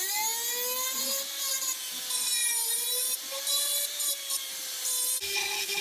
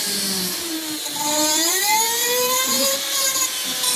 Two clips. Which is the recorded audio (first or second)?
first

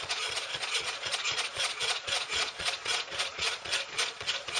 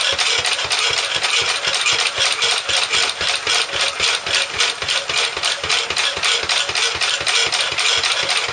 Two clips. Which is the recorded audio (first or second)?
second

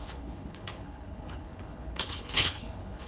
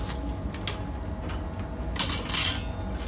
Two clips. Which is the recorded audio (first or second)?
second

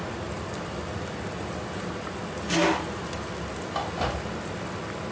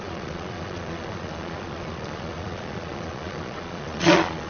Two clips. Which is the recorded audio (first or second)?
first